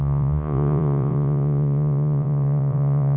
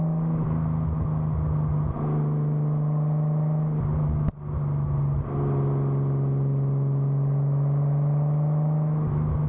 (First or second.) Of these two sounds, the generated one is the first